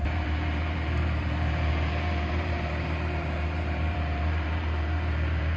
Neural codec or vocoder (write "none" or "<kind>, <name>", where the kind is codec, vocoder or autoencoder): vocoder, BigVGAN v2